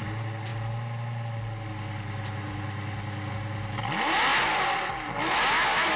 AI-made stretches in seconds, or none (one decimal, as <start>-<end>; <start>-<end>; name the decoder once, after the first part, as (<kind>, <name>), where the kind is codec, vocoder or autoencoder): none